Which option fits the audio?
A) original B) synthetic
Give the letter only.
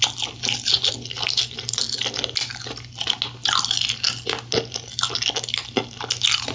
A